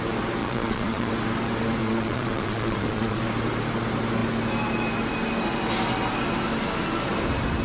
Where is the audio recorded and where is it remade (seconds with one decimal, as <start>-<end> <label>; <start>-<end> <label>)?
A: 0.0-0.4 recorded; 0.4-1.1 remade; 1.1-1.8 recorded; 1.8-3.2 remade; 3.2-7.6 recorded